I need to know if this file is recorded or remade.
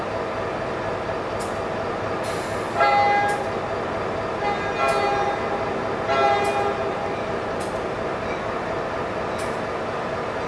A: recorded